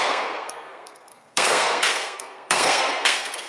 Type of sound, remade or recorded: remade